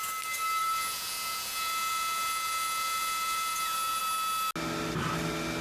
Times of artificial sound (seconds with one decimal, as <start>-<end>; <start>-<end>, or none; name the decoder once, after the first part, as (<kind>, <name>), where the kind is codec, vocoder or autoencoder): 0.6-4.0 (vocoder, Vocos)